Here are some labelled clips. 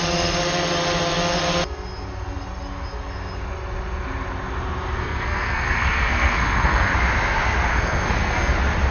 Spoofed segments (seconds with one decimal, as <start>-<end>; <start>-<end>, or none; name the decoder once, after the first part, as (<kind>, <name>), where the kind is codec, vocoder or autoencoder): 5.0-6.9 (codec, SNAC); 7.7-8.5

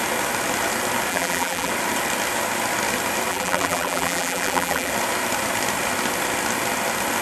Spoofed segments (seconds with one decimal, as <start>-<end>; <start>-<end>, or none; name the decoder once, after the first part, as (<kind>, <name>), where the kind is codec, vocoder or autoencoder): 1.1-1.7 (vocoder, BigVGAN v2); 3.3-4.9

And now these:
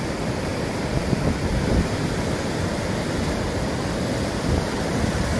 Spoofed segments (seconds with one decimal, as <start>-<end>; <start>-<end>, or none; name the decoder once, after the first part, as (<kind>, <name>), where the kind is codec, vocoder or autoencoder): 0.0-5.4 (vocoder, BigVGAN v2)